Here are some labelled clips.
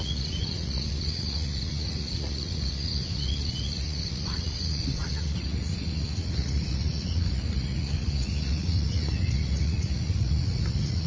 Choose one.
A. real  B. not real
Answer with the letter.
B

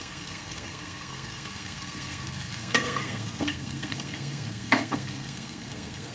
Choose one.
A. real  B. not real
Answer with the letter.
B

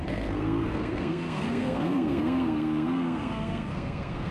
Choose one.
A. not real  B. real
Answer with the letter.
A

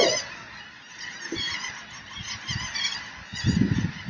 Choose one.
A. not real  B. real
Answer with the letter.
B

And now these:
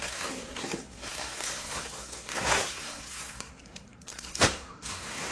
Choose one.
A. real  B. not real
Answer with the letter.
B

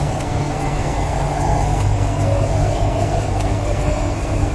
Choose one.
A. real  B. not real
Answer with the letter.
B